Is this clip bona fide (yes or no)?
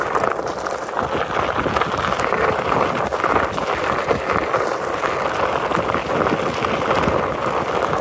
yes